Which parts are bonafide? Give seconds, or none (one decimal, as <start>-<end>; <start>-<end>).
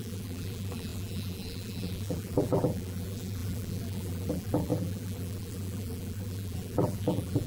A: none